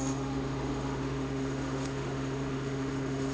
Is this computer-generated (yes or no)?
yes